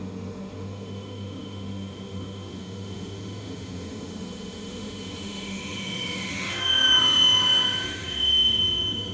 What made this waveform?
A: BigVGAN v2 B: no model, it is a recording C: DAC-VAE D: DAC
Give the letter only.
C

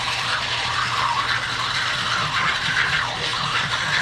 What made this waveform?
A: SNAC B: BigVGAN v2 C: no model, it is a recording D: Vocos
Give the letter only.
C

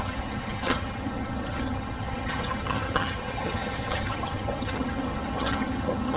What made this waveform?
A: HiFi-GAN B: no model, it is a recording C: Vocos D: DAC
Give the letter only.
A